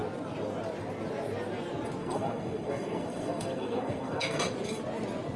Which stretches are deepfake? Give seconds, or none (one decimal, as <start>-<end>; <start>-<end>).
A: 2.0-4.4